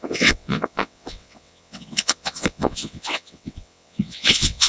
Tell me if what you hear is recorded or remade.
remade